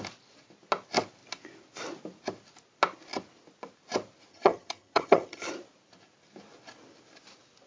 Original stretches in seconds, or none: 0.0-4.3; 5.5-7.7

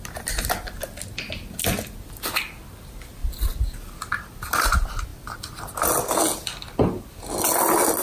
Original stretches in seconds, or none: 0.0-8.0

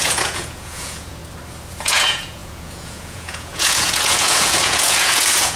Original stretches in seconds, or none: 1.2-1.7

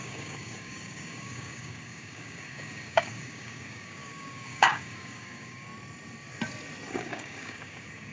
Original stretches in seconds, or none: 5.7-6.9

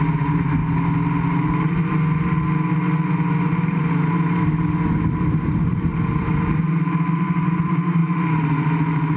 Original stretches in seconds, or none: 0.6-3.5

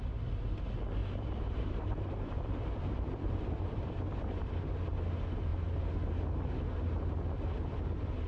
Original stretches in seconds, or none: 0.0-1.0; 4.5-8.3

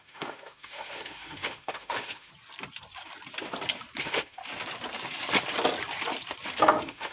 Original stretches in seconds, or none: 2.3-4.0; 4.4-6.6

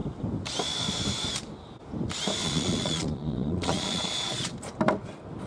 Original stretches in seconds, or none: 0.0-2.4; 4.5-5.5